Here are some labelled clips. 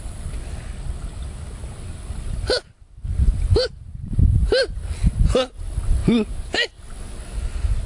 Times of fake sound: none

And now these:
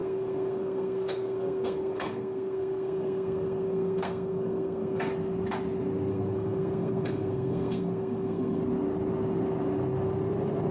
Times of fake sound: 0.0-5.1 (codec, SNAC); 6.1-8.6